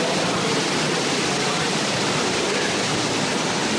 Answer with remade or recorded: recorded